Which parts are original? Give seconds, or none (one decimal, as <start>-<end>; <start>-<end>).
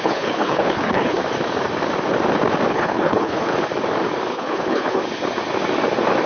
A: 1.2-2.7; 3.5-4.3; 5.0-6.3